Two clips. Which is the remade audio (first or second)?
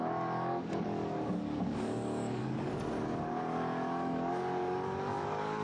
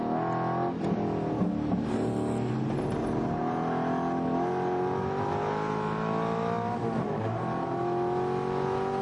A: first